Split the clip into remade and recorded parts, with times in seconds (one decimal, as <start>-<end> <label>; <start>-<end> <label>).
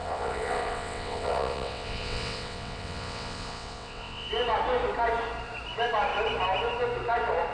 0.0-4.3 remade; 4.3-7.5 recorded